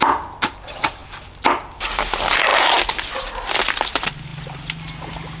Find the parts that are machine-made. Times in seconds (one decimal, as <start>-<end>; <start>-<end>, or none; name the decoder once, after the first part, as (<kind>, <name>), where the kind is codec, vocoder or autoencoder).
none